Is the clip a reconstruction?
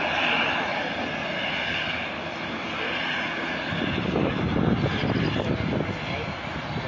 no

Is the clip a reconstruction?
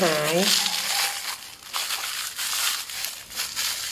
no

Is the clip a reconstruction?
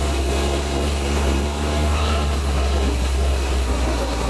yes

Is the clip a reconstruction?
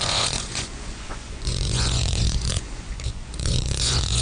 yes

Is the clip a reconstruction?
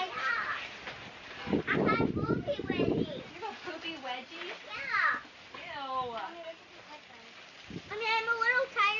no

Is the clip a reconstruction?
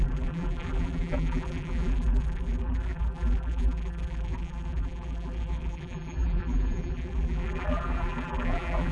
yes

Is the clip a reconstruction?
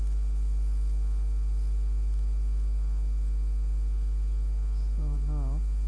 no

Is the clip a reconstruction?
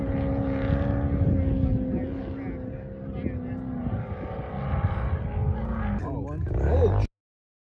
no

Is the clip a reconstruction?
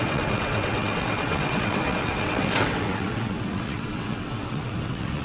yes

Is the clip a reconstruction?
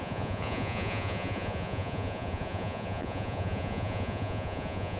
yes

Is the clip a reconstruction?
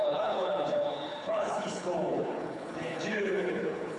yes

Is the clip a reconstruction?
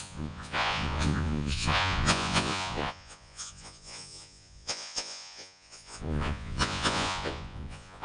yes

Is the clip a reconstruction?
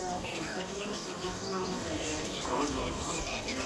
yes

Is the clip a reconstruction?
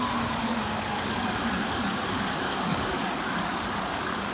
yes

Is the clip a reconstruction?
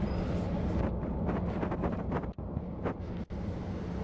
no